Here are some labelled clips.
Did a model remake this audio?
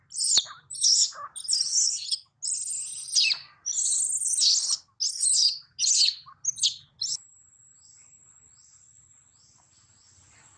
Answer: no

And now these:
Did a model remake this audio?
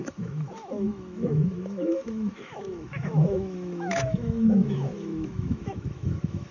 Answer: yes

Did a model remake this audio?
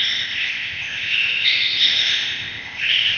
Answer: yes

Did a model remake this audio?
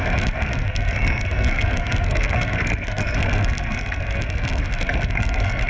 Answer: yes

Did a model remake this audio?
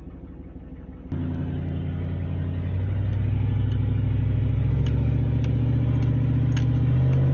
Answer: no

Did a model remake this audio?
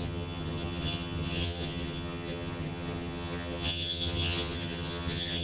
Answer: yes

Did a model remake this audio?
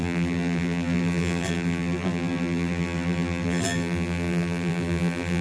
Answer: yes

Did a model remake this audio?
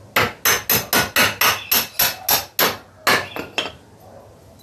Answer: no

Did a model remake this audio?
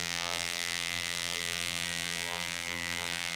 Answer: yes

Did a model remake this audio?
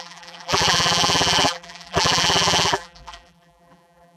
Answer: yes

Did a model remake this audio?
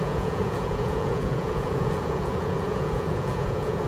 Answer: yes